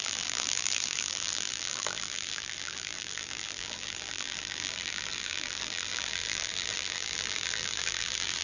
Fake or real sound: fake